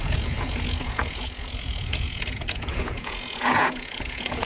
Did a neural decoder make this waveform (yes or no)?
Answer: yes